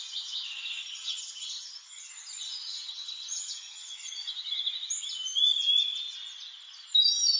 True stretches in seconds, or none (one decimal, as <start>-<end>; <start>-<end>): 0.0-0.8; 2.1-2.7; 4.2-7.4